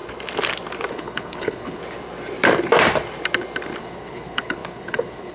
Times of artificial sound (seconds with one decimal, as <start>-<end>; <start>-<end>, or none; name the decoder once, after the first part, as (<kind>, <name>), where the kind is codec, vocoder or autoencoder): 0.9-1.8 (codec, HILCodec); 3.8-5.3